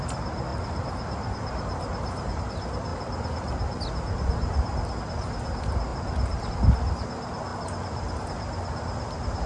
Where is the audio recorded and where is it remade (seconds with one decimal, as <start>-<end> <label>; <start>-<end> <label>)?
0.0-0.5 recorded; 0.5-2.4 remade; 2.4-9.5 recorded